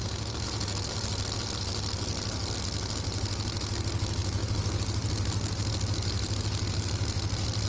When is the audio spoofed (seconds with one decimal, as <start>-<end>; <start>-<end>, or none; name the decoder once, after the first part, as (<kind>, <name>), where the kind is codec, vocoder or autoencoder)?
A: none